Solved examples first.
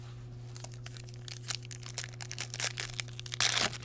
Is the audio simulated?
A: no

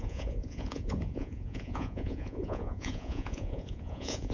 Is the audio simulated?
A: yes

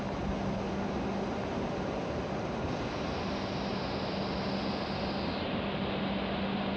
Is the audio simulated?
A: no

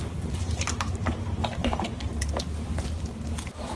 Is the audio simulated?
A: no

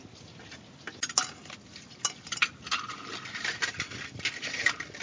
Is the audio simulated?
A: no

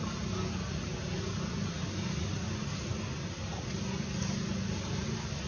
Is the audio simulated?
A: no